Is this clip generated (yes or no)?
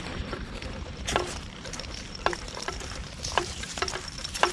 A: yes